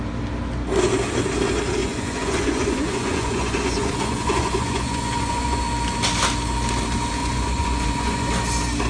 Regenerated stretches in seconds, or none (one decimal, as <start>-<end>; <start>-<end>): 1.8-5.6; 7.2-8.3